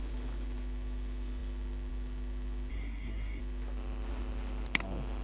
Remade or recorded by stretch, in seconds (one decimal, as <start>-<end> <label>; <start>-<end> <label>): 0.0-2.7 recorded; 2.7-3.4 remade; 3.4-5.2 recorded